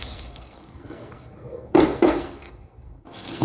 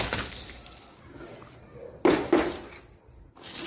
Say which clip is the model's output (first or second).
first